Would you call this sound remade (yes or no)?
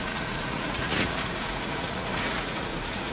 yes